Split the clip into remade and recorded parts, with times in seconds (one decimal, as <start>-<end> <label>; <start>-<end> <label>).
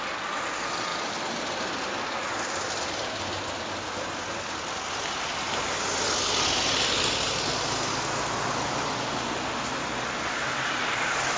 0.0-11.4 recorded